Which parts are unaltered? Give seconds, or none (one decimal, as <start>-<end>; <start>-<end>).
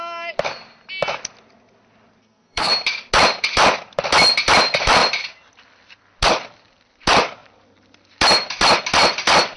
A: 0.0-2.2; 2.7-9.6